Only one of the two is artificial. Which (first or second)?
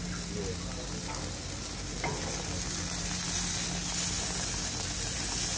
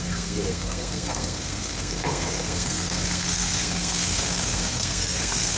second